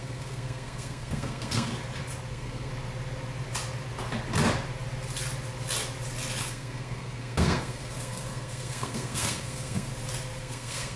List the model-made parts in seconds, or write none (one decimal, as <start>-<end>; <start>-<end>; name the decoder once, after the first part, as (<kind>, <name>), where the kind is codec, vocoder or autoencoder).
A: 0.0-1.7 (codec, SNAC); 2.3-2.7; 6.4-9.9; 10.4-11.0